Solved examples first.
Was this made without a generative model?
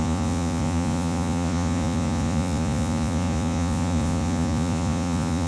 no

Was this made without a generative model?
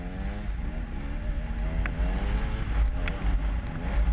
yes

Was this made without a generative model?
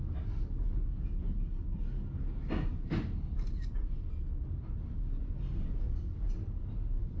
yes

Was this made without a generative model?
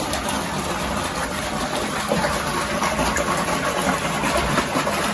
yes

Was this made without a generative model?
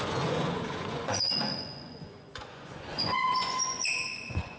no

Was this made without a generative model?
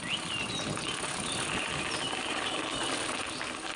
yes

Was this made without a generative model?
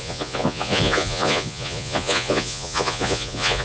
no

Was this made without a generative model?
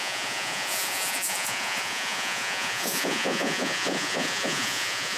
no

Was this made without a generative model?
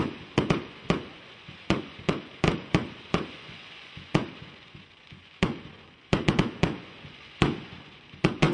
no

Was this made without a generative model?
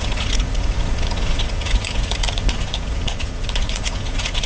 no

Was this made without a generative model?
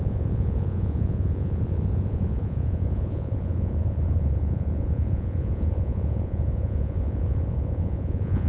no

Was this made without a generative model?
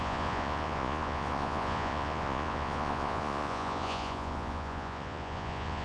no